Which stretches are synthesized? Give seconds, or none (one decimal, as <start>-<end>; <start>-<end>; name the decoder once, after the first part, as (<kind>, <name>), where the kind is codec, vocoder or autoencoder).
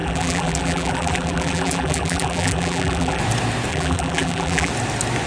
0.0-3.2 (vocoder, BigVGAN v2); 3.7-4.7